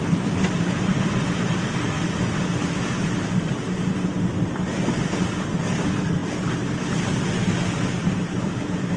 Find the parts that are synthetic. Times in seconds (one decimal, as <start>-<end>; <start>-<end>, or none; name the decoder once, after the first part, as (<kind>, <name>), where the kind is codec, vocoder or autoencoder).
none